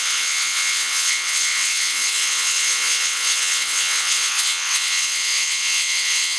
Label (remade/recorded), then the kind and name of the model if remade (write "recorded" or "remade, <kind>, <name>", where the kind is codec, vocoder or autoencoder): remade, vocoder, WaveNeXt